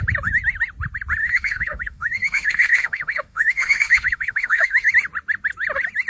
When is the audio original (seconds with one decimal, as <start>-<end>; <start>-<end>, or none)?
0.0-1.2; 4.9-6.1